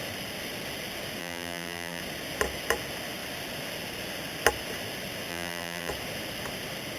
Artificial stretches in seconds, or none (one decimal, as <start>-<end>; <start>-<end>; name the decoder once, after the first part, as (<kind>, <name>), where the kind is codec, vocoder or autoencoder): 1.2-2.0 (vocoder, BigVGAN v2); 5.3-5.9